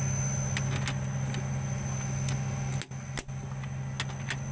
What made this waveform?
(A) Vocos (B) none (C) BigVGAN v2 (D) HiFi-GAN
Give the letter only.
B